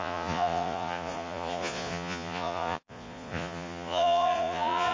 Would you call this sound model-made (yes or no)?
yes